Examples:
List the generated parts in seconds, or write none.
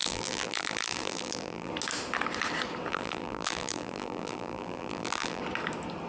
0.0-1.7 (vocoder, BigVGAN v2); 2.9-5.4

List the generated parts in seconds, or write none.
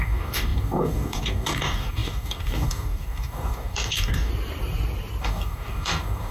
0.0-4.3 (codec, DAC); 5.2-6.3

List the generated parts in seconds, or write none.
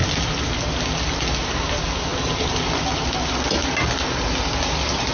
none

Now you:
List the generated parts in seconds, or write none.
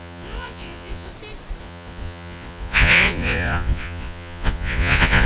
0.0-1.1 (vocoder, Vocos); 1.6-5.3